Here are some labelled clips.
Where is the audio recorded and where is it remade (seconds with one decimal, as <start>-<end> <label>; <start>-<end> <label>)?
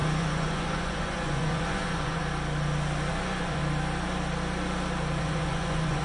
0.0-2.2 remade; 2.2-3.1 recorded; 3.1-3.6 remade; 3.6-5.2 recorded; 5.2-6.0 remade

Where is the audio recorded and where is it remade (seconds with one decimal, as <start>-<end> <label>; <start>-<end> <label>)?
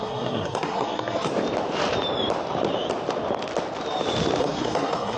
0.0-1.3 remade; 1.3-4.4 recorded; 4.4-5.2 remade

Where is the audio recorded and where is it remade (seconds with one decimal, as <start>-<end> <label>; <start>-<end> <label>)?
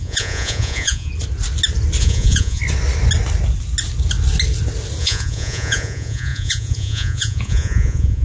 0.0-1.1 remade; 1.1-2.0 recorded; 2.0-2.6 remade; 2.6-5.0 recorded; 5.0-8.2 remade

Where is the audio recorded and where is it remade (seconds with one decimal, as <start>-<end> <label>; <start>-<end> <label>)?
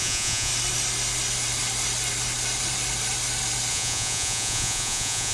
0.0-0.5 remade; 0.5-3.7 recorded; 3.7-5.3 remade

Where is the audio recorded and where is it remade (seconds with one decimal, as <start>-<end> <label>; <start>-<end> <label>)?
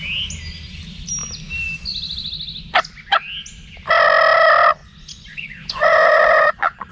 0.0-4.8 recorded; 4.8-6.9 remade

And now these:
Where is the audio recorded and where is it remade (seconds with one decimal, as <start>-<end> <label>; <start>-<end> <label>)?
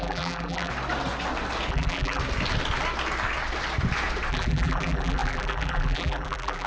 0.0-0.7 remade; 0.7-1.7 recorded; 1.7-2.2 remade; 2.2-4.3 recorded; 4.3-6.7 remade